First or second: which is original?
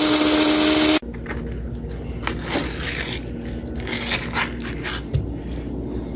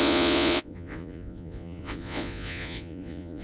first